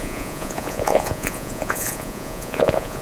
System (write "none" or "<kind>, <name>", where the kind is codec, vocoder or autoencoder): vocoder, Vocos